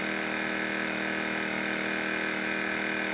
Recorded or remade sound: recorded